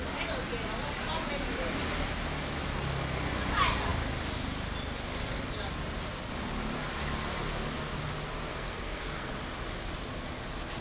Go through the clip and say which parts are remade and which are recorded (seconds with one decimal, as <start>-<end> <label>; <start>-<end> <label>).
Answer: 0.0-8.5 recorded; 8.5-9.3 remade; 9.3-10.8 recorded